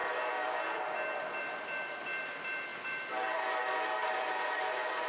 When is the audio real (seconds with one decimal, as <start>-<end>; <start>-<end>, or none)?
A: none